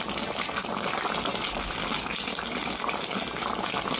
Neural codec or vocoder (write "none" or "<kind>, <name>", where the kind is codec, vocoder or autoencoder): none